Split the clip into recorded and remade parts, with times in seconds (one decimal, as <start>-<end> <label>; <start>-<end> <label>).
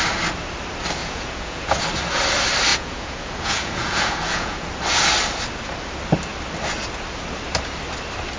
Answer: 0.0-1.0 recorded; 1.0-1.8 remade; 1.8-2.7 recorded; 2.7-4.7 remade; 4.7-8.4 recorded